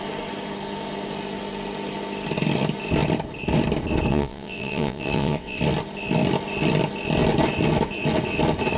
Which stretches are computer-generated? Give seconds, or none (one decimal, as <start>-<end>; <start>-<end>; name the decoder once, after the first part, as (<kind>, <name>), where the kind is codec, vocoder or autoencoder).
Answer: 4.1-5.6 (vocoder, WaveNeXt)

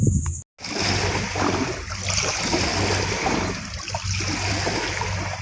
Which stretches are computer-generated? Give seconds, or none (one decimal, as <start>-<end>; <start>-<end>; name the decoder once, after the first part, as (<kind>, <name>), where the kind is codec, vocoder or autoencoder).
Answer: none

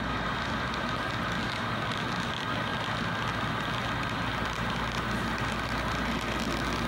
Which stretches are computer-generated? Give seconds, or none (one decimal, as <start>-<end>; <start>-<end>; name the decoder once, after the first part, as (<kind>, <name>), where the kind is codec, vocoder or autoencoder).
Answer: none

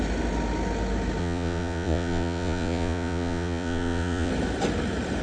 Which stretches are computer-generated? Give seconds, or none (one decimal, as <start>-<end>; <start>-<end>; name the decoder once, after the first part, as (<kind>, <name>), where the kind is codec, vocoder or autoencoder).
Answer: 1.2-4.3 (vocoder, Vocos)

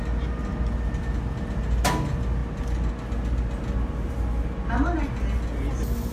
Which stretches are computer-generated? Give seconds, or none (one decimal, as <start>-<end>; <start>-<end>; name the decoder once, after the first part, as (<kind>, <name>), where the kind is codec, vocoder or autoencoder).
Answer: none

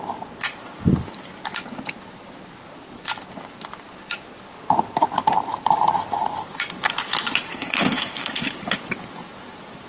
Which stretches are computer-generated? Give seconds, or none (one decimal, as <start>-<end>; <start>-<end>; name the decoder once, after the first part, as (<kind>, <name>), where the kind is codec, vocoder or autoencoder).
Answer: 7.5-8.3 (codec, SNAC)